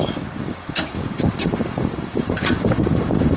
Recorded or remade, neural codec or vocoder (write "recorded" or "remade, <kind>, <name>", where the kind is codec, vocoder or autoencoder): remade, codec, DAC